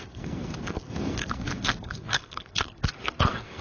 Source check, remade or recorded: remade